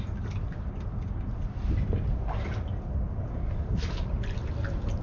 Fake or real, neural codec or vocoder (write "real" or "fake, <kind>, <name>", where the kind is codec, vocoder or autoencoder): real